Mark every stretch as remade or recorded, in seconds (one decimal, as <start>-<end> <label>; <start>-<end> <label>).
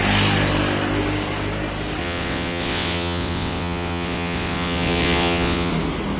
0.0-2.0 recorded; 2.0-5.7 remade; 5.7-6.2 recorded